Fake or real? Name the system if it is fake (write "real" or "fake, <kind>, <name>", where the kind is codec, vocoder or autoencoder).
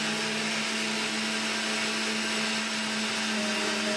real